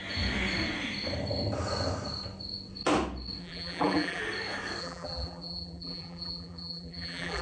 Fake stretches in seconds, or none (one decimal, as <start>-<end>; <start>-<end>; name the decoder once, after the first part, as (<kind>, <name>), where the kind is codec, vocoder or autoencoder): 3.4-4.2 (vocoder, BigVGAN v2); 4.8-7.4